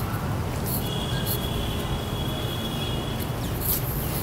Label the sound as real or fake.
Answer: real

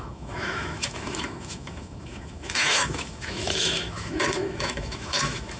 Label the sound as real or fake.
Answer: fake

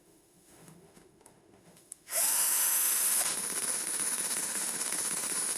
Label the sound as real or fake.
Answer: fake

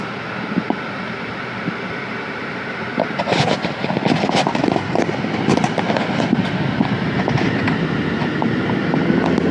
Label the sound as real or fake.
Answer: real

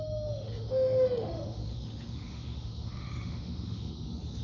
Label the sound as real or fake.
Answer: fake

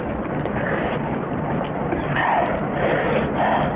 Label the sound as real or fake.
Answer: real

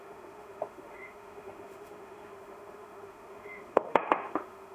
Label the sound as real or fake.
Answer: fake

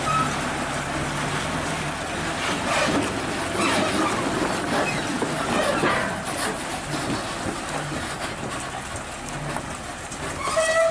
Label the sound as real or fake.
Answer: real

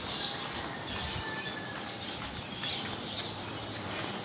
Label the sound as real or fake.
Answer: real